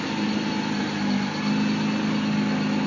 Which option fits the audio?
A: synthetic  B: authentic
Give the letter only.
B